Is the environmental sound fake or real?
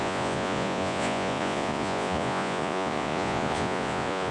fake